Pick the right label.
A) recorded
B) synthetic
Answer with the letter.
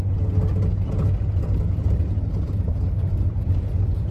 A